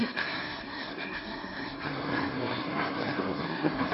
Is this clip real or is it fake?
fake